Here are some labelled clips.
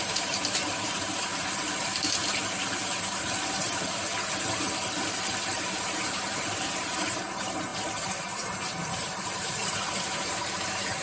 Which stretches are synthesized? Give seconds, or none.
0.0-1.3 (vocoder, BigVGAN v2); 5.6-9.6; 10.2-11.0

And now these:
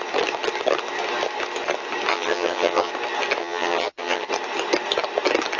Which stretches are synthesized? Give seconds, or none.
2.1-2.9 (vocoder, HiFi-GAN); 3.4-4.3

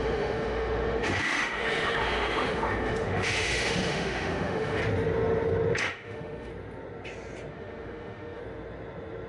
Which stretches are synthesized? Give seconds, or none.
0.0-4.8 (autoencoder, DAC-VAE); 5.8-6.5; 7.5-8.4